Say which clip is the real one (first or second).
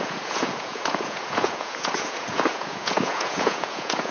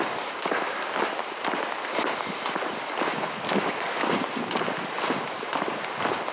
second